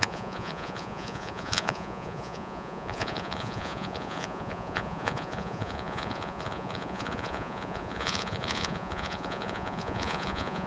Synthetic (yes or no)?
yes